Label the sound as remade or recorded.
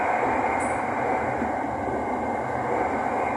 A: recorded